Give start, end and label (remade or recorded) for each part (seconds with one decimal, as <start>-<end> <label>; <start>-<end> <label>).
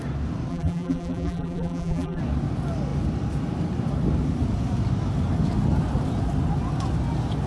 0.0-0.5 recorded; 0.5-2.2 remade; 2.2-7.5 recorded